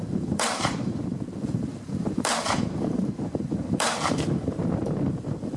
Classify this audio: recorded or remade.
remade